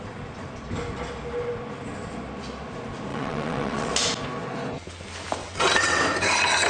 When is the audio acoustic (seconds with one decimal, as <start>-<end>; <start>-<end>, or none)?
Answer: 0.0-3.1; 3.9-5.4; 6.0-6.7